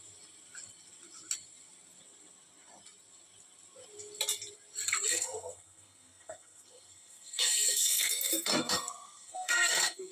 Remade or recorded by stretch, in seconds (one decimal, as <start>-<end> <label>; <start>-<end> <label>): 0.0-5.1 recorded; 5.1-10.1 remade